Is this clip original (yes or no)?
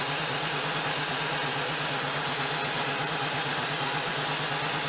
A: yes